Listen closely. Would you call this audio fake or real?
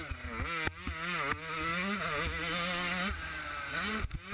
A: real